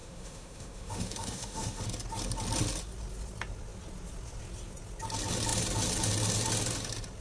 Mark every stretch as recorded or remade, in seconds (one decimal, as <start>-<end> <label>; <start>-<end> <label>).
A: 0.0-1.8 remade; 1.8-7.2 recorded